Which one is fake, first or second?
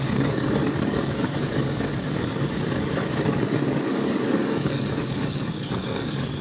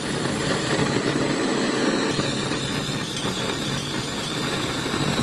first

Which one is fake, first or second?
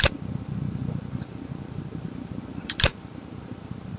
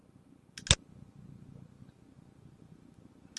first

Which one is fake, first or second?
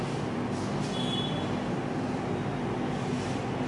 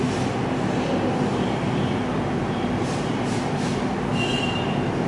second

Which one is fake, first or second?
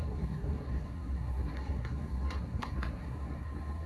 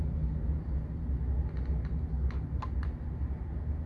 first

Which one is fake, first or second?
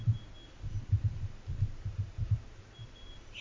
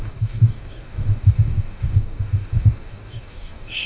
second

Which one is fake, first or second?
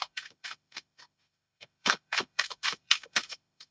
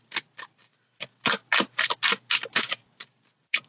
first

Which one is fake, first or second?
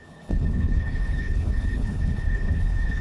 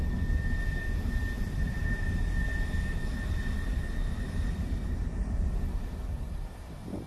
first